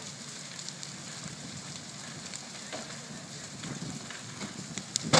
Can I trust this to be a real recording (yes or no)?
yes